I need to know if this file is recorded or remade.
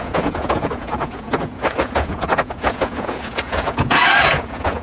remade